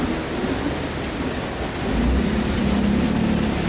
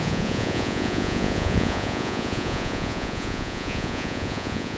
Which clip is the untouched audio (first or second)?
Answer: first